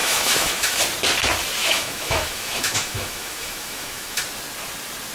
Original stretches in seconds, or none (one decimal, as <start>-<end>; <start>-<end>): 0.8-1.6; 4.2-5.1